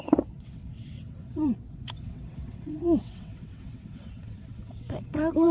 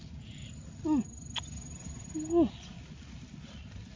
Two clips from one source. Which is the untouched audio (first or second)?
second